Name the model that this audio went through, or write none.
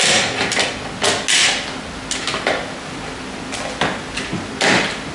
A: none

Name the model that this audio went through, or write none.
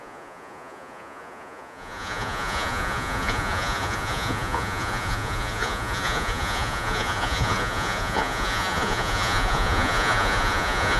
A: vocoder, Vocos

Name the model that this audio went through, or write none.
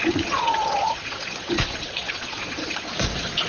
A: vocoder, Vocos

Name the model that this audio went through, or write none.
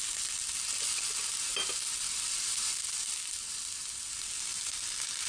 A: none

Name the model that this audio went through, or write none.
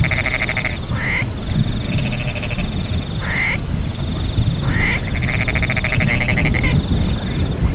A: none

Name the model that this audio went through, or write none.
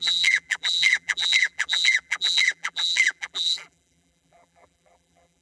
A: vocoder, BigVGAN v2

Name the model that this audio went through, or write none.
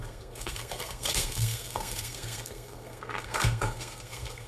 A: codec, SNAC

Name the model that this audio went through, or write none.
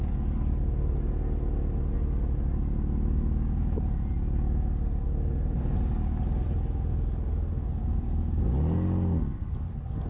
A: none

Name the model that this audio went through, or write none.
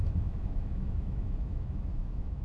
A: autoencoder, DAC-VAE